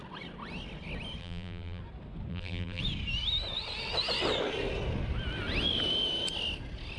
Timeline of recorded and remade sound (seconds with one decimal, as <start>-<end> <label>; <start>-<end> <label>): 0.0-1.2 recorded; 1.2-1.8 remade; 1.8-2.3 recorded; 2.3-2.8 remade; 2.8-7.0 recorded